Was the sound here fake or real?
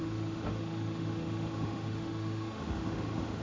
fake